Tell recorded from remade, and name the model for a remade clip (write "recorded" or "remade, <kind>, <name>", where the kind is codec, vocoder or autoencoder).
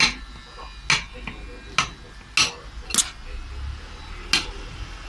recorded